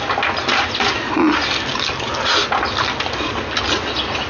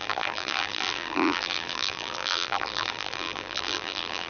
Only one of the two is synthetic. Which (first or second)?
second